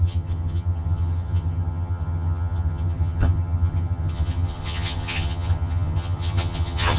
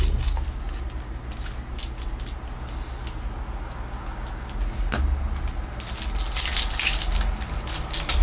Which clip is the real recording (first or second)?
second